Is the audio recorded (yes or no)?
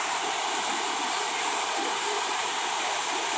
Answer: yes